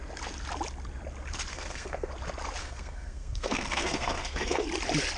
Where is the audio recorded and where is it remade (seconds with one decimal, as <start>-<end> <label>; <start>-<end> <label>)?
0.0-1.5 recorded; 1.5-2.1 remade; 2.1-2.6 recorded; 2.6-4.6 remade; 4.6-5.2 recorded

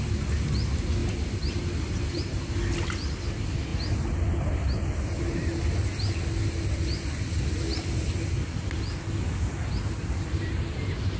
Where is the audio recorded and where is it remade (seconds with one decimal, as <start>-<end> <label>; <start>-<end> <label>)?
0.0-11.2 recorded